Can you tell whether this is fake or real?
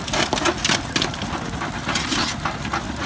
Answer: real